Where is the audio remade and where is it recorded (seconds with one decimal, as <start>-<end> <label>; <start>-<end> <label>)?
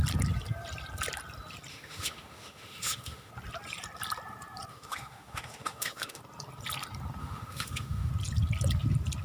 0.0-1.7 recorded; 1.7-3.3 remade; 3.3-4.7 recorded; 4.7-6.2 remade; 6.2-7.2 recorded; 7.2-8.1 remade; 8.1-9.2 recorded